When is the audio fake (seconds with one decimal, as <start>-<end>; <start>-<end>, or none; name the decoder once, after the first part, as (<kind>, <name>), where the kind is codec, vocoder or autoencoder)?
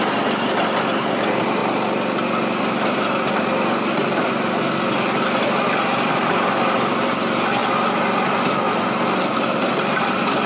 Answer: none